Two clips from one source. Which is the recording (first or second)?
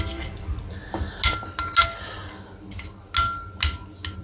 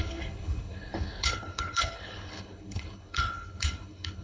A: first